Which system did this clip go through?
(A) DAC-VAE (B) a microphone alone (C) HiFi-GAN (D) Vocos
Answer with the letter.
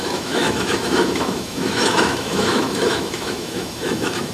A